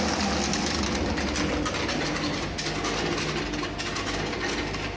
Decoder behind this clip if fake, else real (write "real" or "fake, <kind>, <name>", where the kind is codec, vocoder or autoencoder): real